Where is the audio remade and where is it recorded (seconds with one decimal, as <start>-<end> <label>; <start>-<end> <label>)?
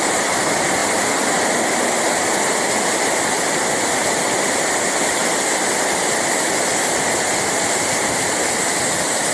0.0-9.3 recorded